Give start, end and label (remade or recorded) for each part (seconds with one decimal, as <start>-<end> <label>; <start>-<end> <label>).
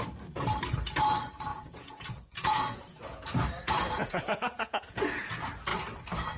0.0-1.5 recorded; 1.5-5.3 remade; 5.3-6.4 recorded